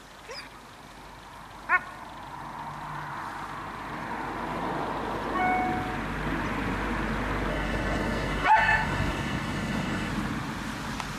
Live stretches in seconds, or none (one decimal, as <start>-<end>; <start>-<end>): 0.0-7.5; 10.1-11.2